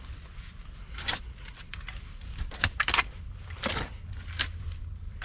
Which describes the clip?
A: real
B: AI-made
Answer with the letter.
B